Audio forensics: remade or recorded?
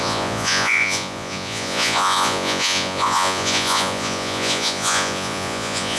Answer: remade